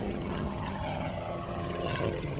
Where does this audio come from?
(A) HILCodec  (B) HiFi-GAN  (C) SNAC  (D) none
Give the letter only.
B